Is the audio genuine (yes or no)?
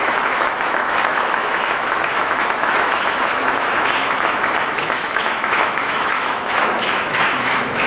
no